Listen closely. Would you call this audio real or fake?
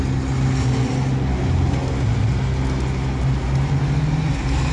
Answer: real